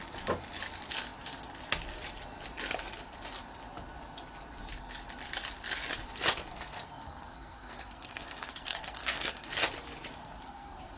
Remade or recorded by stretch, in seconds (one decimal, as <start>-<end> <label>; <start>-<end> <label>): 0.0-6.5 recorded; 6.5-9.5 remade; 9.5-10.2 recorded; 10.2-11.0 remade